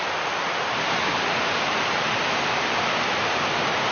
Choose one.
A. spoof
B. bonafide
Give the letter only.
A